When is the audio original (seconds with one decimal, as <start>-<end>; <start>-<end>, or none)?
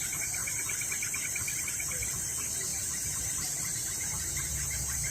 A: 0.0-2.7; 3.2-3.8